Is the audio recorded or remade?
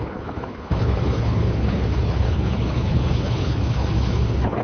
remade